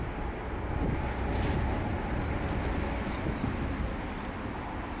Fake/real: real